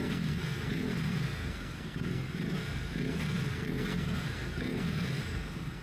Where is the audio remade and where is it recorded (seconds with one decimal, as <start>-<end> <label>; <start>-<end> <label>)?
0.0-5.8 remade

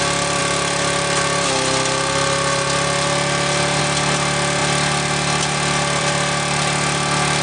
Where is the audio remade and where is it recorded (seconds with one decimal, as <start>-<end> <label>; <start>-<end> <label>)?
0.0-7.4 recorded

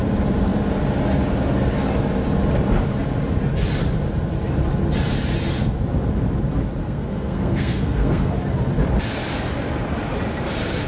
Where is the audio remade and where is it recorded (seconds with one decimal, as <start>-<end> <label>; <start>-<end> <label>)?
0.0-6.8 recorded; 6.8-8.3 remade; 8.3-10.9 recorded

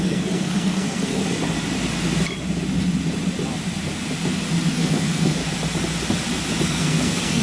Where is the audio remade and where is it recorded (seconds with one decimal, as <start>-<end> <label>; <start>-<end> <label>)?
0.0-1.2 remade; 1.2-4.7 recorded; 4.7-5.4 remade; 5.4-6.6 recorded; 6.6-7.4 remade